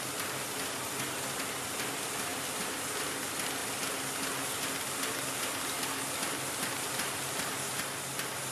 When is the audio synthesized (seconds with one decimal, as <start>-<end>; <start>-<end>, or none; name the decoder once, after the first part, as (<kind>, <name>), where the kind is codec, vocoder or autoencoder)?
none